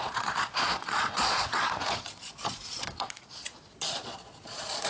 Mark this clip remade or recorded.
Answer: remade